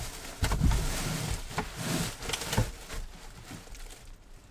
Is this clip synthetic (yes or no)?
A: no